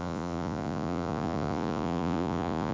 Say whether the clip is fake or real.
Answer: fake